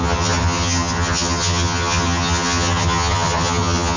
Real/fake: fake